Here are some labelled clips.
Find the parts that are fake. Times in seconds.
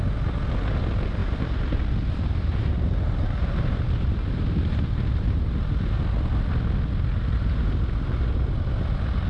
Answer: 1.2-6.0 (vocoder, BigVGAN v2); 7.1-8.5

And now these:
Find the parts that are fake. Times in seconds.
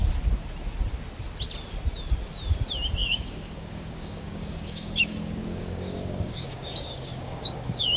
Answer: 3.0-8.0 (codec, DAC)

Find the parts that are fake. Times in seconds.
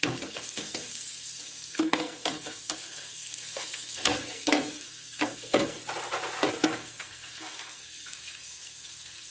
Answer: 0.0-5.8 (codec, SNAC); 6.5-9.3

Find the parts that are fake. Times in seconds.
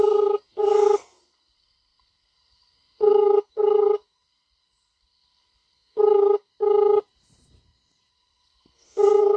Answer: 0.0-6.5 (codec, SNAC); 8.1-9.4